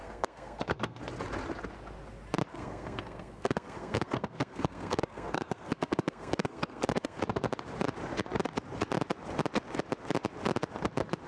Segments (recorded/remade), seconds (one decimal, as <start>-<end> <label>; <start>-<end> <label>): 0.0-1.0 remade; 1.0-2.5 recorded; 2.5-7.2 remade; 7.2-11.3 recorded